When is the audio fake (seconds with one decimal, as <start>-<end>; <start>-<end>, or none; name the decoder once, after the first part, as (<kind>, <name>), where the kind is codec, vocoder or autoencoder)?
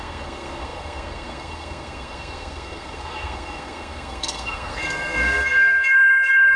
0.0-6.6 (codec, SNAC)